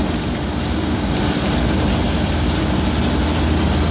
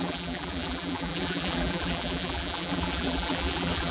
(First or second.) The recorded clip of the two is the first